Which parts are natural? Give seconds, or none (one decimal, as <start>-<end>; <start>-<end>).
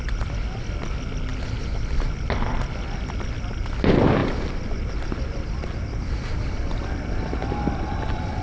0.0-8.4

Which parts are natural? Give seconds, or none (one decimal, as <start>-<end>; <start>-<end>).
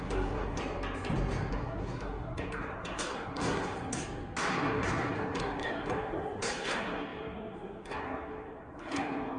0.6-1.5; 4.0-4.5